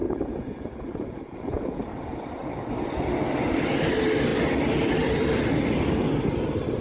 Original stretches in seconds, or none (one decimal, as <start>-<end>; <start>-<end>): 1.8-6.8